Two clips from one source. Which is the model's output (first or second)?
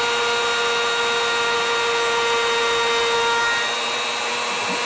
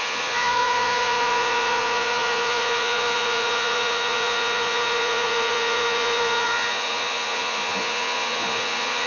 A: second